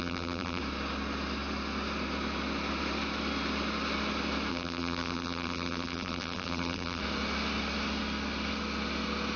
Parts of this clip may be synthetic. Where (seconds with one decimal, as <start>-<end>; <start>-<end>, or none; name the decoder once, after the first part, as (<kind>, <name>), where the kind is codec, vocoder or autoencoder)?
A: 0.0-0.6 (vocoder, BigVGAN v2); 4.5-7.0